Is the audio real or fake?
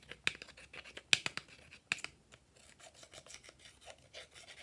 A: real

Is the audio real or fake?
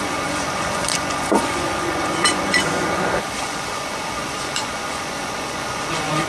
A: fake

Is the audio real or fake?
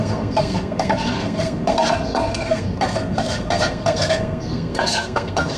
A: fake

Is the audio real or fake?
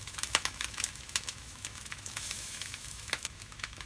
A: fake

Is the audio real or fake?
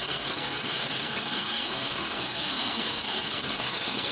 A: fake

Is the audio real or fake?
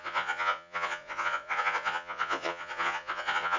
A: fake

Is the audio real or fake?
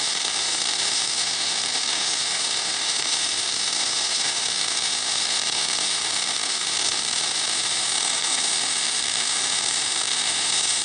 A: fake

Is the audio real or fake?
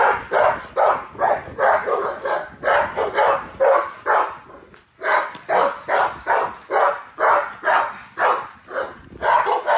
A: real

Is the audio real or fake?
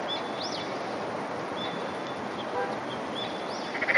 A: real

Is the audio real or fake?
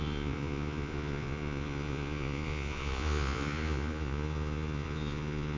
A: fake